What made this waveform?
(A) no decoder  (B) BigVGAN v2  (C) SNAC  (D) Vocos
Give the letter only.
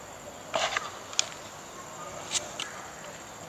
A